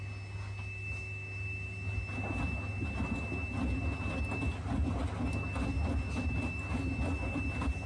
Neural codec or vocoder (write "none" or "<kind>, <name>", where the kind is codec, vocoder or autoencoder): none